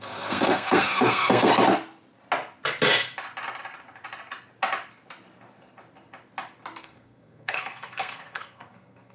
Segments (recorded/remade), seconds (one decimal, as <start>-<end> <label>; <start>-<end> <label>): 0.0-1.5 remade; 1.5-6.8 recorded; 6.8-9.1 remade